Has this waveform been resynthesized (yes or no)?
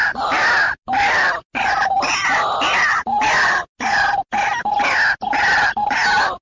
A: no